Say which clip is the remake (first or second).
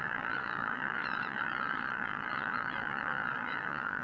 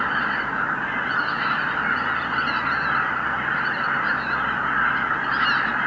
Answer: first